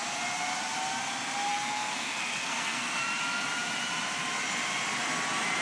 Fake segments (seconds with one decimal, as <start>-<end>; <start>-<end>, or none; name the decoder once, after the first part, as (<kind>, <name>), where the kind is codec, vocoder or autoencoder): 1.5-3.0 (codec, SNAC)